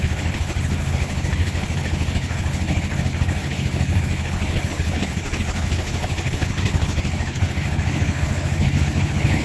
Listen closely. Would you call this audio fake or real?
fake